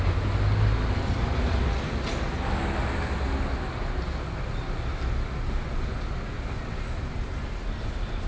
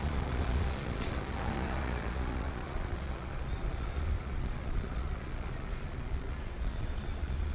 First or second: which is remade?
second